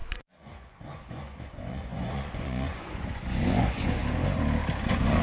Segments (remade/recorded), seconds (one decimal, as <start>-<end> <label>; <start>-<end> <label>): 0.0-4.0 remade; 4.0-4.8 recorded; 4.8-5.2 remade